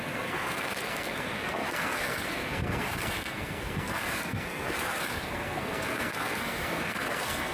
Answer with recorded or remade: remade